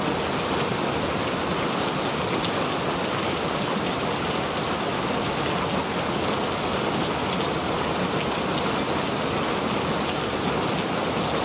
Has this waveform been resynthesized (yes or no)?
no